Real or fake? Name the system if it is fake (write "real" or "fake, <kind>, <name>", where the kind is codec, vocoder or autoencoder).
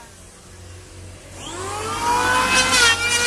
real